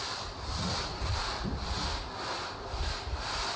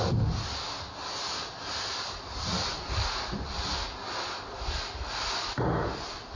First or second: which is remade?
first